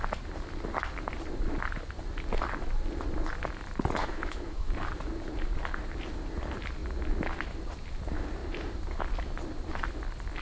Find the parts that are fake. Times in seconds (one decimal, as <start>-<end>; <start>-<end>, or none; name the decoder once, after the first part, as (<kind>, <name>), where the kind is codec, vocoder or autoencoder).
4.0-4.7 (autoencoder, DAC-VAE)